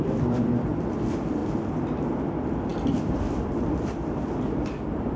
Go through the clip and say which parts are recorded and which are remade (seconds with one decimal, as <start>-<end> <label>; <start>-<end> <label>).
0.0-1.4 remade; 1.4-2.2 recorded; 2.2-2.7 remade; 2.7-3.6 recorded; 3.6-5.2 remade